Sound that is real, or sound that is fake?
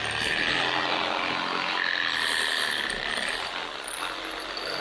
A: real